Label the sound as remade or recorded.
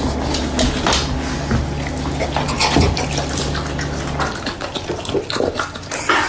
recorded